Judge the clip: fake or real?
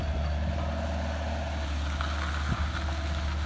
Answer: real